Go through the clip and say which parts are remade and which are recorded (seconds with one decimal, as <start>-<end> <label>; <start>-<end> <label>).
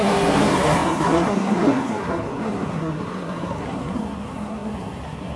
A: 0.0-5.4 remade